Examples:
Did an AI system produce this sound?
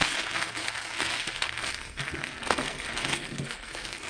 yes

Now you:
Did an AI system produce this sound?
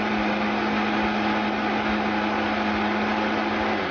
no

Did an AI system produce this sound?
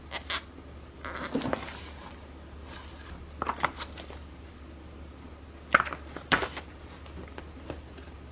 no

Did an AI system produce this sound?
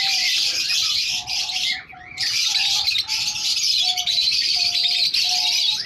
yes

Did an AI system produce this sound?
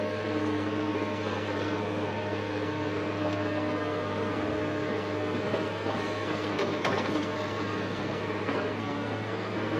yes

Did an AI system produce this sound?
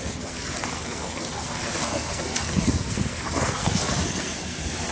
yes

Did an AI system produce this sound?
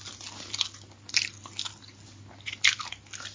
no